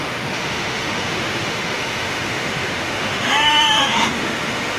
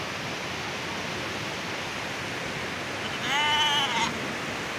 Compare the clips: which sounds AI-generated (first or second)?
first